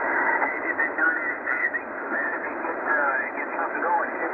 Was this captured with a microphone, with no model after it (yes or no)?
no